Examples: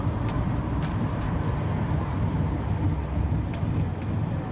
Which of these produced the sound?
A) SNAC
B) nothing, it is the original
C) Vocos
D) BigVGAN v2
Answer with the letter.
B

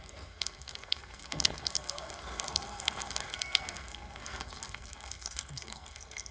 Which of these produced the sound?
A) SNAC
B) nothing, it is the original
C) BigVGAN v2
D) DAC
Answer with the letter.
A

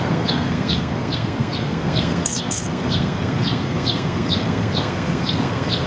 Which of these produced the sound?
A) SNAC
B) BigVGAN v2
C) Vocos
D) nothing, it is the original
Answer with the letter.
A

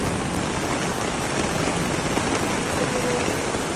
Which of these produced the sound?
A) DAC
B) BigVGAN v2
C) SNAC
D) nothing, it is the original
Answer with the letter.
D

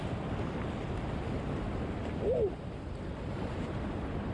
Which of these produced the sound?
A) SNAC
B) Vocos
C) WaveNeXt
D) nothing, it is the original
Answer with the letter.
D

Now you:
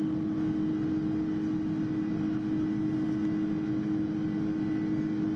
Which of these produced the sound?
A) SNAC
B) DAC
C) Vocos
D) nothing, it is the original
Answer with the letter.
D